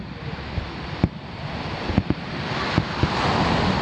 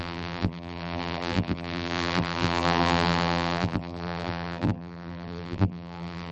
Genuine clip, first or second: first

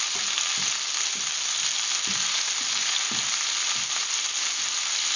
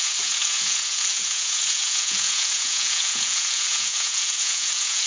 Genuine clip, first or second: first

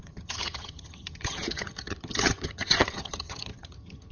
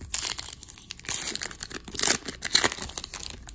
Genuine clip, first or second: second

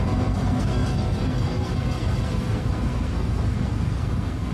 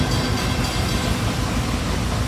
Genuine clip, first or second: second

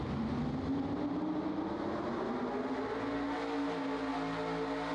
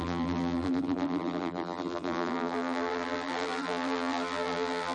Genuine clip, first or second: first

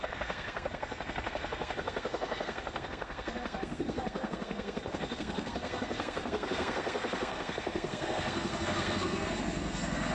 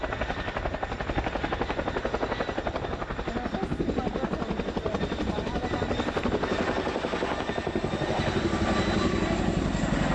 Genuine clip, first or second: second